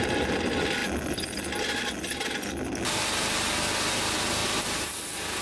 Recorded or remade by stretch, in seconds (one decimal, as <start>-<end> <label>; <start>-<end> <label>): 0.0-4.4 recorded; 4.4-4.9 remade; 4.9-5.4 recorded